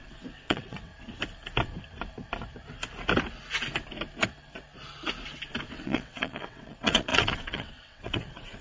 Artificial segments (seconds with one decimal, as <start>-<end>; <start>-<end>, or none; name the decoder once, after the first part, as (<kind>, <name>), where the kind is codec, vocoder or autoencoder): 0.0-0.9 (vocoder, WaveNeXt); 5.7-8.6